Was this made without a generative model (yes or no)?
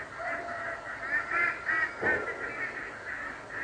yes